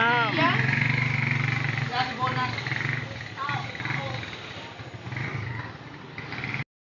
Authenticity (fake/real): real